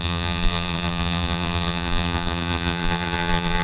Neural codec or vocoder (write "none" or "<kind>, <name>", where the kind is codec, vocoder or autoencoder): vocoder, BigVGAN v2